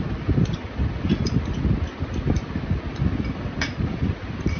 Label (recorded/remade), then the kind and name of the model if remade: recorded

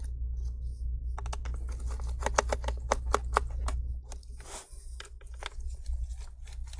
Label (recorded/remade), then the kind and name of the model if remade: recorded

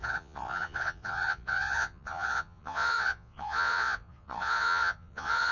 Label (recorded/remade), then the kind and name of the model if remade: remade, vocoder, Vocos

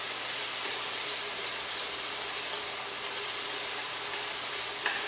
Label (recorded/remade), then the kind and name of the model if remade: remade, vocoder, BigVGAN v2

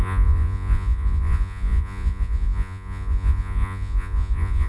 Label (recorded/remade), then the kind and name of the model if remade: remade, vocoder, Vocos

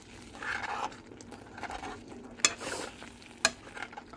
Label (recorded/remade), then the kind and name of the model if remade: recorded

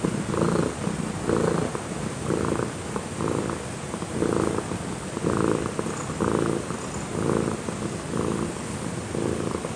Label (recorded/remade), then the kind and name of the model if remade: recorded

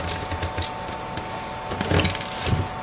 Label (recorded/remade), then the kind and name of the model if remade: recorded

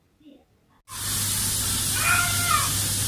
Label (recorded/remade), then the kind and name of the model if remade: recorded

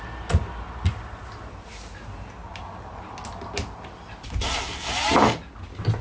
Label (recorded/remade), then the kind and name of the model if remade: recorded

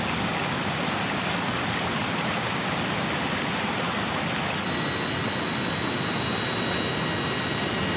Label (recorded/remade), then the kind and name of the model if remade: recorded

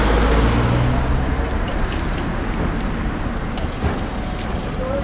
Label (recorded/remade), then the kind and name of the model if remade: recorded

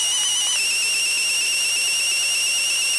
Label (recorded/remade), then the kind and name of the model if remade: recorded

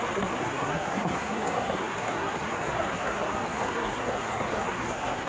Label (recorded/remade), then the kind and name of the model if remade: remade, codec, SNAC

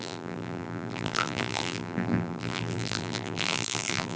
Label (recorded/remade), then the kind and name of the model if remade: remade, vocoder, BigVGAN v2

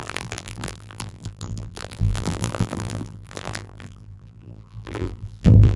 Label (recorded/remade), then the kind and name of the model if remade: remade, vocoder, BigVGAN v2